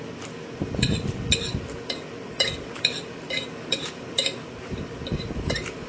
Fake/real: fake